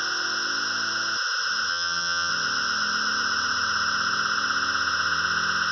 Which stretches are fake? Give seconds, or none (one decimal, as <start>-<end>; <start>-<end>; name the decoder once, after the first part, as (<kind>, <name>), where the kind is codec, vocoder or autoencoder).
1.7-2.3 (vocoder, HiFi-GAN)